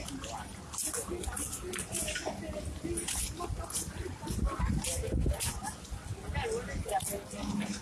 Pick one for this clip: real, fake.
real